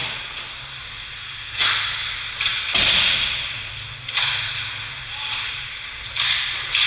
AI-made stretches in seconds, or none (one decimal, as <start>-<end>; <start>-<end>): none